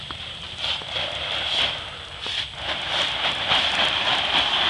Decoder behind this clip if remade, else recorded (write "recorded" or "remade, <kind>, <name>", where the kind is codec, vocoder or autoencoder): recorded